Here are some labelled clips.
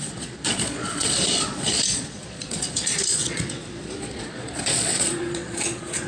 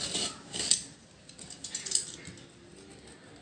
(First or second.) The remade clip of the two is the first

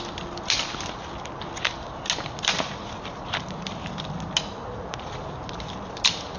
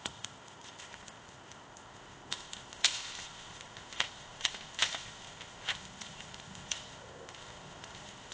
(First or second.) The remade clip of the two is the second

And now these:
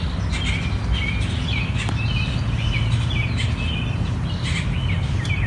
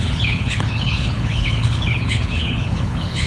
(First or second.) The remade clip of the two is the second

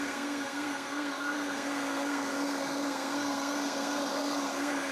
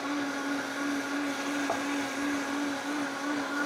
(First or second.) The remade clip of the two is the first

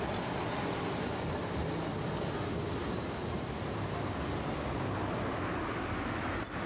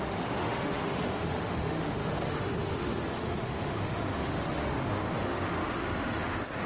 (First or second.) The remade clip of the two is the second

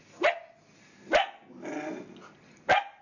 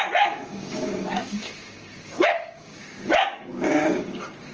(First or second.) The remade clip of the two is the second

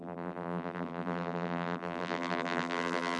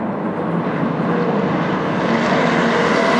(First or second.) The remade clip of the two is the first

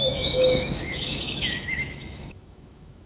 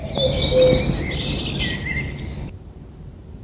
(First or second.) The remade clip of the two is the first